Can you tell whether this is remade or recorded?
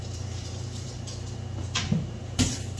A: remade